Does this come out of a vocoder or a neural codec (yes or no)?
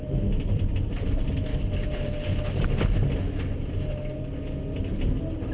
no